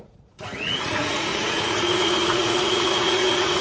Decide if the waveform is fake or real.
fake